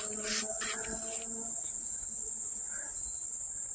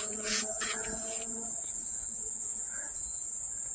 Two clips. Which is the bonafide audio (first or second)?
first